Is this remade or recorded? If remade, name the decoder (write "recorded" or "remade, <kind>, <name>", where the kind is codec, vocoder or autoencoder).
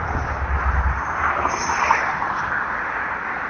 recorded